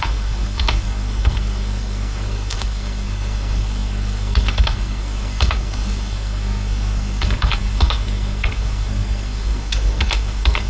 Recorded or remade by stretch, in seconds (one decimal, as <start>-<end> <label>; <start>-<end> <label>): 0.0-10.7 remade